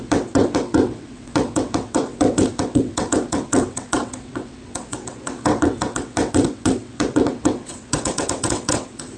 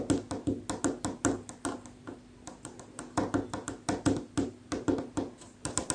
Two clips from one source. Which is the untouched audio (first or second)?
second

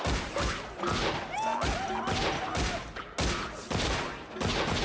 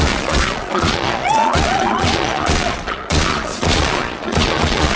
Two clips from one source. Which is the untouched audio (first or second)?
first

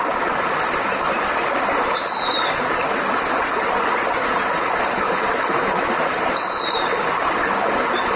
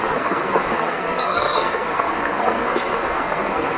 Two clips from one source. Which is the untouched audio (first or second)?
first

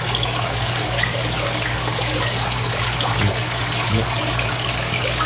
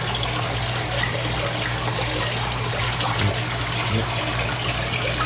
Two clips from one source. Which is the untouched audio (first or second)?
second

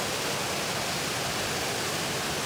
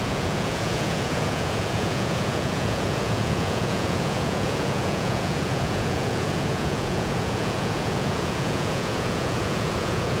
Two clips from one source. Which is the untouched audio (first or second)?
first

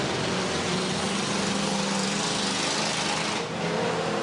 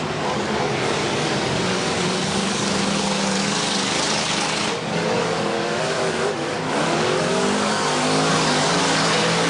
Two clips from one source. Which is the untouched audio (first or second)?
first